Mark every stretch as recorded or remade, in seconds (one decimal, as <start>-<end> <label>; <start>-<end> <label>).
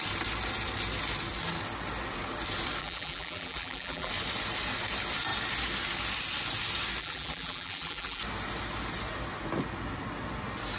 0.0-2.8 recorded; 2.8-4.1 remade; 4.1-7.0 recorded; 7.0-8.2 remade; 8.2-10.8 recorded